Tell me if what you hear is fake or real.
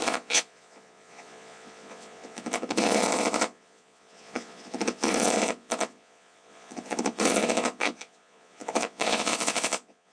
fake